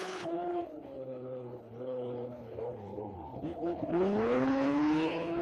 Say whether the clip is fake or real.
fake